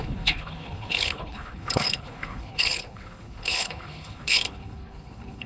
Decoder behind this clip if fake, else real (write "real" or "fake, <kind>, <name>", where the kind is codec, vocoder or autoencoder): fake, codec, HILCodec